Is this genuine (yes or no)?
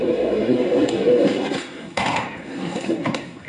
no